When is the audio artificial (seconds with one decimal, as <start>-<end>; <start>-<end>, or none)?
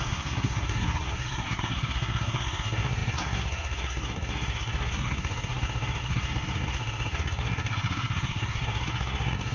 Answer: 0.0-9.5